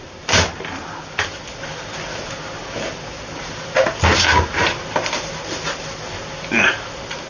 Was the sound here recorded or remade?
recorded